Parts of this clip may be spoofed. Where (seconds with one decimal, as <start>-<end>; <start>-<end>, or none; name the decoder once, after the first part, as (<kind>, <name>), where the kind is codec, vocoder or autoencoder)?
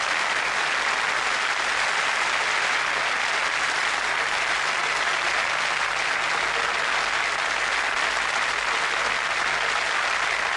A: none